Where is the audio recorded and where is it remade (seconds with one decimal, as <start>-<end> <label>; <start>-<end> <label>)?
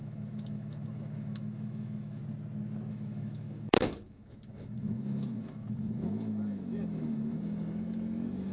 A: 0.0-2.2 remade; 2.2-2.9 recorded; 2.9-8.5 remade